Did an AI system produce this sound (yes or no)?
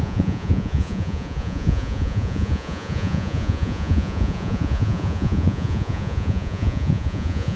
yes